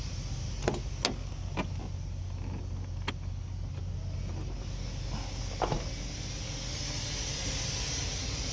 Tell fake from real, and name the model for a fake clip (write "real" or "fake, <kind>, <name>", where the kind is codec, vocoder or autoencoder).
real